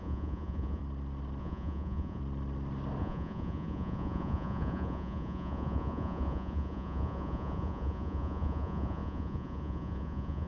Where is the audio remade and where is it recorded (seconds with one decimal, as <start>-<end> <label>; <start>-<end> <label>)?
0.0-0.8 remade; 0.8-1.4 recorded; 1.4-2.2 remade; 2.2-3.0 recorded; 3.0-10.5 remade